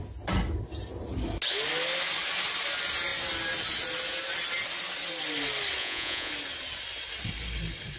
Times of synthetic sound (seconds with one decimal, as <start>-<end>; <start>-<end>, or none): 5.8-6.3